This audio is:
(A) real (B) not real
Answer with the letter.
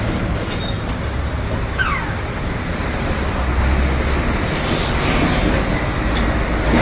A